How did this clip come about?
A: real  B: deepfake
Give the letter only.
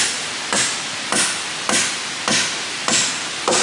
A